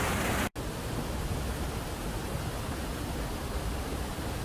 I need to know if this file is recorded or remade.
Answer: recorded